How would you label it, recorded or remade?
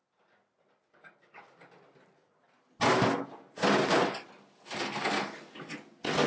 recorded